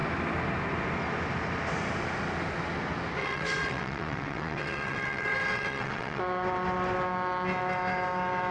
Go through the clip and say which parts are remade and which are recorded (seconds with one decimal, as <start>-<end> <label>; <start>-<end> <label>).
0.0-3.2 recorded; 3.2-6.2 remade; 6.2-8.5 recorded

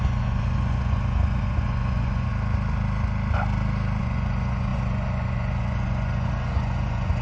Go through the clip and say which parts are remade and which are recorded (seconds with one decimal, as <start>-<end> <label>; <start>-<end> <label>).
0.0-2.3 remade; 2.3-4.0 recorded; 4.0-7.2 remade

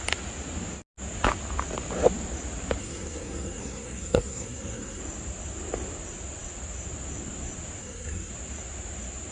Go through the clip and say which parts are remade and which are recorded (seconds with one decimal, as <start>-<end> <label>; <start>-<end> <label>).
0.0-2.8 recorded; 2.8-5.0 remade; 5.0-7.8 recorded; 7.8-8.3 remade; 8.3-9.3 recorded

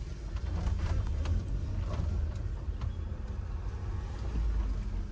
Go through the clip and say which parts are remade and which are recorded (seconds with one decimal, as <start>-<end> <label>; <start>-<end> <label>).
0.0-1.4 recorded; 1.4-2.0 remade; 2.0-5.1 recorded

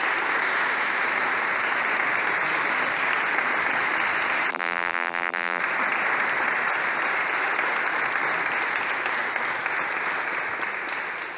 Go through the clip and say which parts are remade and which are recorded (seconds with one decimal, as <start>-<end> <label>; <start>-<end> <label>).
0.0-4.5 recorded; 4.5-5.6 remade; 5.6-11.4 recorded

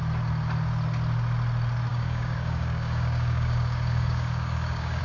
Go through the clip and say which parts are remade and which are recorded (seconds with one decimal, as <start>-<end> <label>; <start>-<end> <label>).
0.0-1.9 recorded; 1.9-5.0 remade